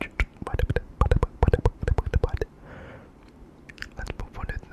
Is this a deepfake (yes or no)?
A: yes